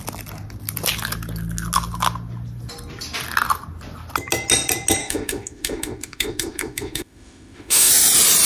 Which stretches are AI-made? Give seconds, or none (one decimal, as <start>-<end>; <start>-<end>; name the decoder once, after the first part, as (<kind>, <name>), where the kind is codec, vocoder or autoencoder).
5.0-7.9 (autoencoder, DAC-VAE)